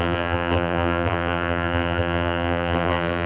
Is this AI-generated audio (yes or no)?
yes